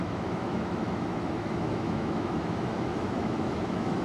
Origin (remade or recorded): remade